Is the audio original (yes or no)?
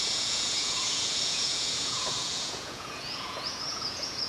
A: no